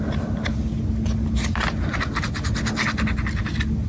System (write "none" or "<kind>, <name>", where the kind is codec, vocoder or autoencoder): none